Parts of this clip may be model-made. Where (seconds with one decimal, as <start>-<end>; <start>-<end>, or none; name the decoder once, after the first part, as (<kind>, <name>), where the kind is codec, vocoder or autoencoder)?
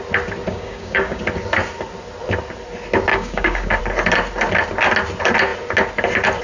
0.5-1.2 (codec, DAC); 3.1-3.8